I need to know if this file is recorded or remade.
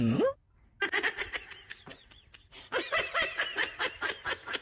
recorded